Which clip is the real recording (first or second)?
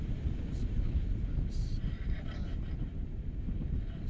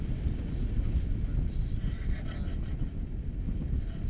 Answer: second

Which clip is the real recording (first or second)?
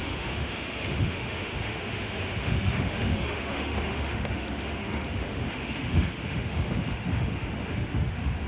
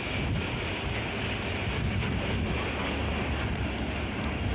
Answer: second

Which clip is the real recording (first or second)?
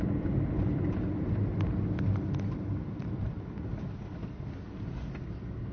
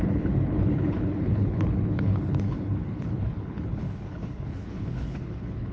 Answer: first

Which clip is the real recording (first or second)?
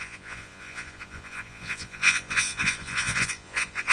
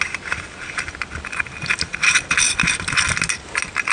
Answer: second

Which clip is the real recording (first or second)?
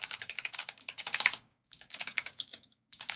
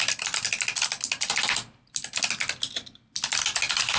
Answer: second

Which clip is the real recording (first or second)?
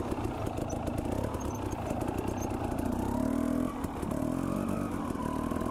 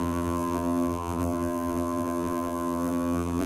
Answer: first